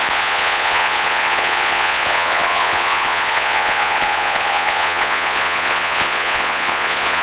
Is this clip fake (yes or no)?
yes